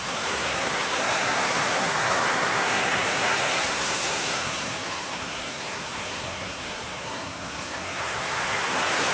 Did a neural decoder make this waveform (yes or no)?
yes